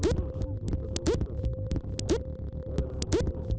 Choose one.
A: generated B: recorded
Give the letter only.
B